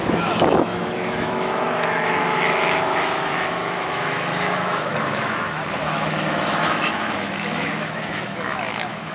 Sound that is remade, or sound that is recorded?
remade